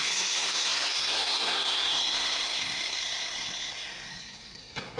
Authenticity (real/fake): fake